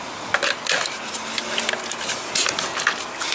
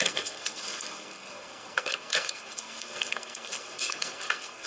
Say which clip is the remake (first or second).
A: second